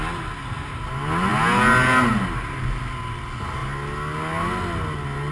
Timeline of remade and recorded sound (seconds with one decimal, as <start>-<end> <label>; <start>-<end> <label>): 0.0-5.3 recorded

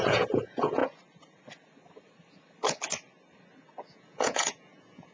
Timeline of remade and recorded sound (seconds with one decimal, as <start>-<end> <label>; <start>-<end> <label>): 0.0-0.8 remade; 0.8-3.9 recorded; 3.9-5.1 remade

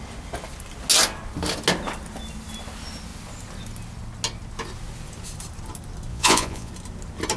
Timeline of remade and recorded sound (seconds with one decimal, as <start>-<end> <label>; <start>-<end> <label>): 0.0-6.1 recorded; 6.1-6.7 remade; 6.7-7.4 recorded

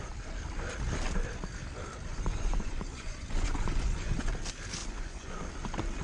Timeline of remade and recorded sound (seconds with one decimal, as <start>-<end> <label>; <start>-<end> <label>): 0.0-2.1 recorded; 2.1-4.3 remade; 4.3-4.8 recorded; 4.8-5.4 remade; 5.4-6.0 recorded